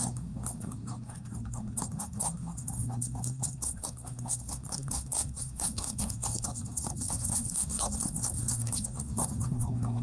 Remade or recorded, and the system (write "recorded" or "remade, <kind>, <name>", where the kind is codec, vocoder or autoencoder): remade, codec, SNAC